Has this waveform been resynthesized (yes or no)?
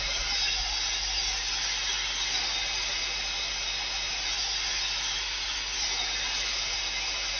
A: no